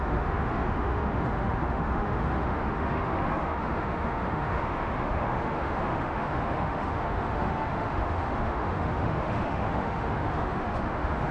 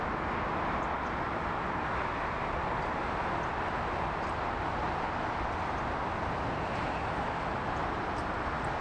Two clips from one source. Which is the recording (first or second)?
second